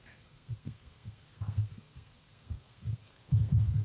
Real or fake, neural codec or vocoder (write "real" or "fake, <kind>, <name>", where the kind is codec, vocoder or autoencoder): fake, codec, SNAC